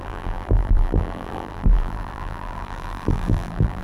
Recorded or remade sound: remade